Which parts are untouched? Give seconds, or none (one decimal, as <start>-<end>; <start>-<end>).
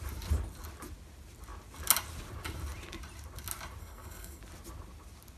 0.0-3.8; 4.4-5.4